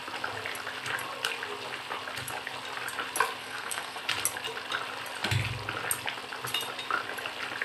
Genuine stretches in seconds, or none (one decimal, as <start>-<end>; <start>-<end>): 0.0-3.4; 4.0-7.6